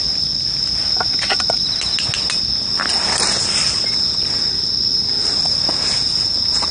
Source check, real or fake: real